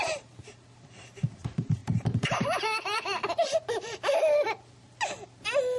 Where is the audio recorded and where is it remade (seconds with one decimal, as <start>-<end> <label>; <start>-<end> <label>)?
0.0-1.8 recorded; 1.8-4.2 remade; 4.2-5.8 recorded